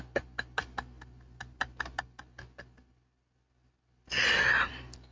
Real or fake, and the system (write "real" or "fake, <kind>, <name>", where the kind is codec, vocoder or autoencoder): real